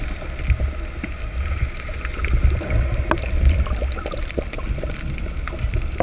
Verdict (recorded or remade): recorded